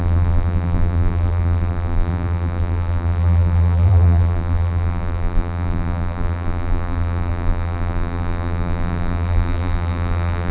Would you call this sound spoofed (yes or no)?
yes